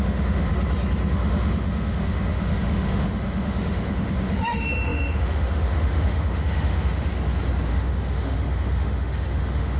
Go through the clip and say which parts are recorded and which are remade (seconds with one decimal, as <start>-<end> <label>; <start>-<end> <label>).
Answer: 0.0-0.5 remade; 0.5-1.1 recorded; 1.1-7.1 remade; 7.1-7.7 recorded; 7.7-9.8 remade